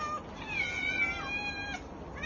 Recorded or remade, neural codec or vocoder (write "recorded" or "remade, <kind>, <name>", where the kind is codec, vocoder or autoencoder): recorded